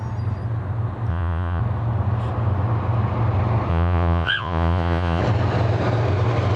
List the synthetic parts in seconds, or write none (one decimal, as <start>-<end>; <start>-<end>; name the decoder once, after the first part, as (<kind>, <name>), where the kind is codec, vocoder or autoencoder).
1.1-1.6 (vocoder, Vocos); 3.7-5.2